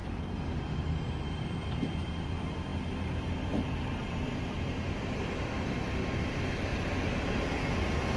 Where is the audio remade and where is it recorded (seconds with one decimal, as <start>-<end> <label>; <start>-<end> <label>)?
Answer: 0.0-2.1 remade; 2.1-6.7 recorded; 6.7-7.4 remade; 7.4-8.2 recorded